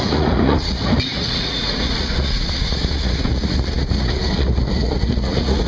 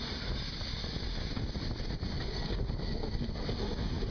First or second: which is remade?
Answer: first